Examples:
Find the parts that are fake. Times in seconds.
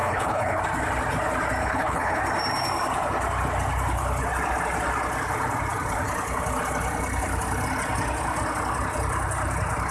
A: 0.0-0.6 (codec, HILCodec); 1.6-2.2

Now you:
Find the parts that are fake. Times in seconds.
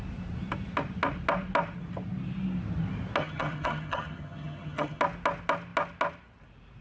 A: 3.2-5.0 (vocoder, HiFi-GAN)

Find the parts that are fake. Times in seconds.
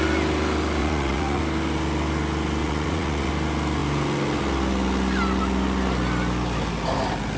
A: 0.8-1.4 (vocoder, Vocos); 2.6-3.3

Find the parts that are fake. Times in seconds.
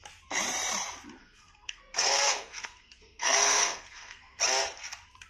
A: 1.2-4.4 (codec, SNAC)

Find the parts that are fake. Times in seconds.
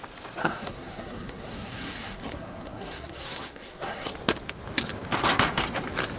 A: 0.4-4.1 (codec, SNAC)